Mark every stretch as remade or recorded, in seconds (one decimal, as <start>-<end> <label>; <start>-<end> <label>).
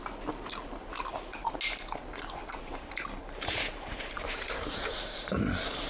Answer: 0.0-2.4 recorded; 2.4-5.9 remade